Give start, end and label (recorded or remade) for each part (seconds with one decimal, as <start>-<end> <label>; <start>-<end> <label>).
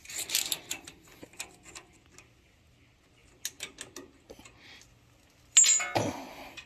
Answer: 0.0-6.7 recorded